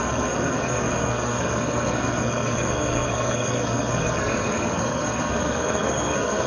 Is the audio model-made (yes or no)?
yes